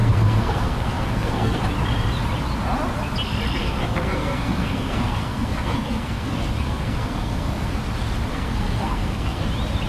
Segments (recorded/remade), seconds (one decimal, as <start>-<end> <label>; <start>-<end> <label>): 0.0-1.6 remade; 1.6-3.6 recorded; 3.6-7.8 remade; 7.8-8.3 recorded; 8.3-9.5 remade; 9.5-9.9 recorded